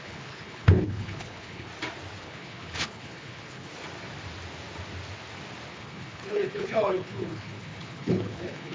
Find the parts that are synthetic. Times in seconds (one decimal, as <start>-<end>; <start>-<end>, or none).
0.0-1.7; 2.2-3.7; 5.7-8.7